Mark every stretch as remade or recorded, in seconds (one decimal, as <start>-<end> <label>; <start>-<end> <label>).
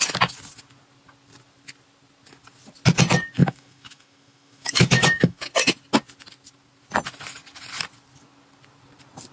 0.0-3.4 recorded; 3.4-5.5 remade; 5.5-9.3 recorded